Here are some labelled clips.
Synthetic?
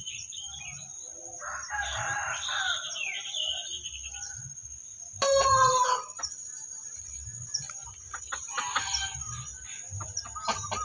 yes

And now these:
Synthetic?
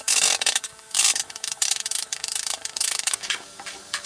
yes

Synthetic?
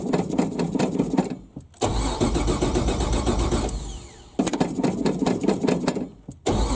no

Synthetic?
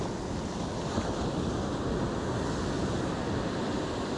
no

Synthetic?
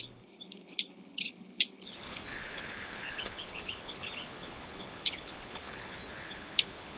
yes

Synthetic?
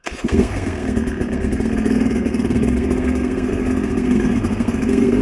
yes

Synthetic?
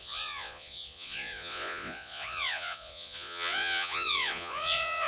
yes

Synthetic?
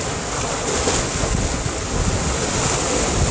no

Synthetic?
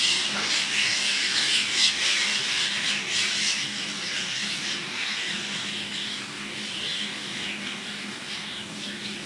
yes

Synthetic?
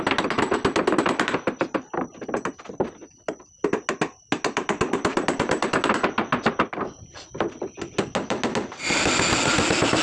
no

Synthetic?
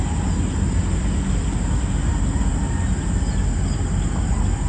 no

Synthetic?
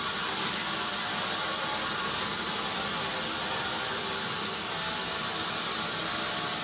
no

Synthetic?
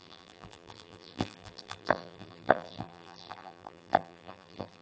yes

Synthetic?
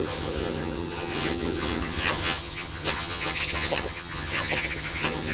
yes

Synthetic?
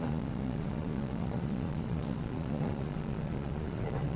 yes